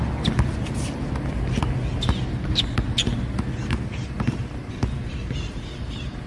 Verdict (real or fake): real